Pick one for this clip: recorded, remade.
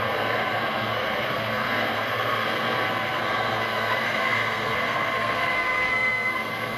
remade